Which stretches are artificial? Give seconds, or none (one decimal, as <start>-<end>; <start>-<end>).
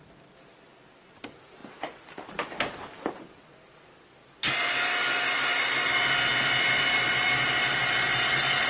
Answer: none